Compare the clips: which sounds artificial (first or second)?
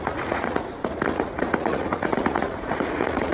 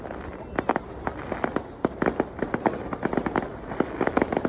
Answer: first